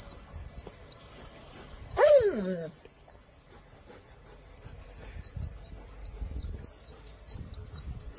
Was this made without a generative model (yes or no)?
yes